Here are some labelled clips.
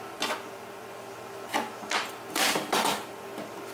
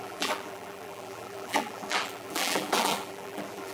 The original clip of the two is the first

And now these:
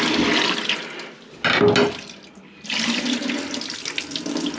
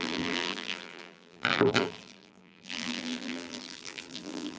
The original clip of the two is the first